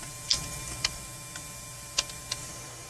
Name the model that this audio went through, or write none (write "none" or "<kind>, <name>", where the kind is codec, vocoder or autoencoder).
none